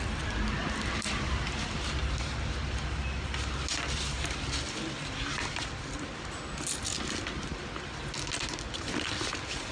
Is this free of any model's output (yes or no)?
yes